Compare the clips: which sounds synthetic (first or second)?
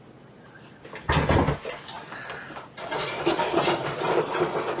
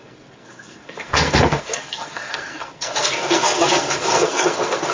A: second